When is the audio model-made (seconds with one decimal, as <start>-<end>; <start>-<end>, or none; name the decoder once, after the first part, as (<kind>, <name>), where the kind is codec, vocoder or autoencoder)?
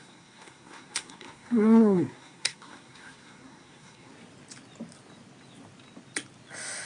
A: 0.0-4.1 (codec, SNAC)